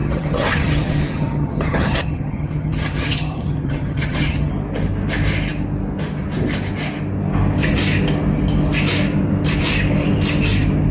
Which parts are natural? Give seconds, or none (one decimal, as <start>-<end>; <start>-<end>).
4.5-10.9

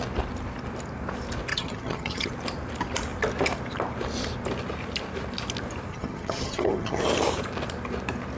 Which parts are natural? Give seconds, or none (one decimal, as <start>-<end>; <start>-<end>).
0.0-1.5; 2.3-5.9; 7.0-8.4